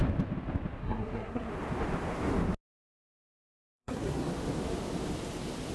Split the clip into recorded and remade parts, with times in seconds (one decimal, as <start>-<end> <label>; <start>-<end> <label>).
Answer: 0.0-0.8 recorded; 0.8-1.5 remade; 1.5-3.1 recorded; 3.1-4.3 remade; 4.3-5.7 recorded